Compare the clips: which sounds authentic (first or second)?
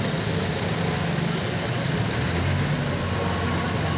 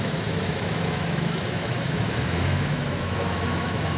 first